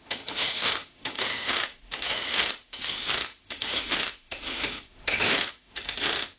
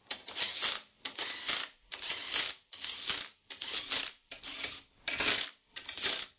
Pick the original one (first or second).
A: second